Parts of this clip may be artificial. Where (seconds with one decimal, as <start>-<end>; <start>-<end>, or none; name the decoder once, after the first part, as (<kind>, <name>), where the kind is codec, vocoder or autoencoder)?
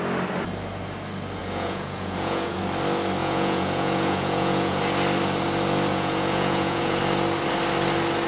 1.4-2.6 (vocoder, Vocos); 3.2-4.8; 5.9-7.0